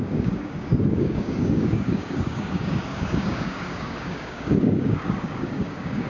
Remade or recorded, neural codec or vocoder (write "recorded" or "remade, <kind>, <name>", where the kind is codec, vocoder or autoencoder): remade, codec, DAC